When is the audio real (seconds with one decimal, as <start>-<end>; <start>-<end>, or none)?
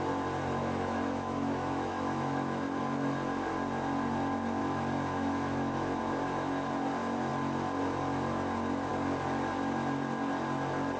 0.0-0.6; 2.8-4.6; 6.0-11.0